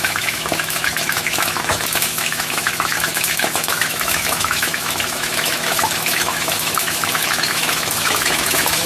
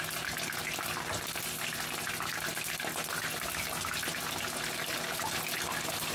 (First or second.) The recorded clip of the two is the second